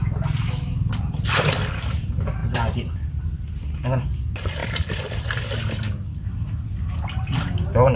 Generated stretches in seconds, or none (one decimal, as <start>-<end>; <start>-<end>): none